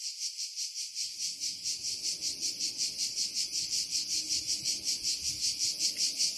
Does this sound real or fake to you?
real